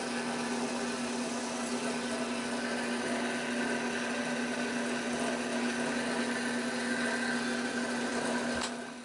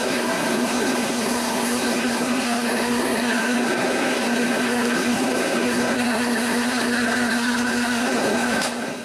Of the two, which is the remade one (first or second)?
second